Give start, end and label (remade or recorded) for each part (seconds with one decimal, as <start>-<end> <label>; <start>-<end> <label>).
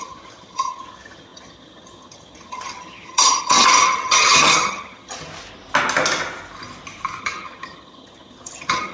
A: 0.0-5.3 remade; 5.3-7.2 recorded; 7.2-8.9 remade